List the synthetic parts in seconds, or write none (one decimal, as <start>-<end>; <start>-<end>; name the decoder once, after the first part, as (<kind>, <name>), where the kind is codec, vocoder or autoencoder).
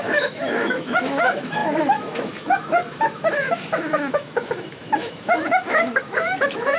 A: 0.0-6.8 (autoencoder, DAC-VAE)